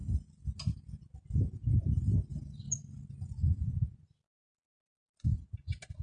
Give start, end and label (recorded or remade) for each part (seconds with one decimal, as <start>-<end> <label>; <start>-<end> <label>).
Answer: 0.0-6.0 recorded